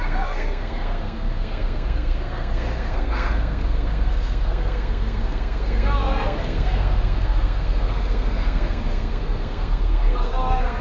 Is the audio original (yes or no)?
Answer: no